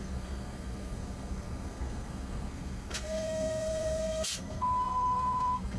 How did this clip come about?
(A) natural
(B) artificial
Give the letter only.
B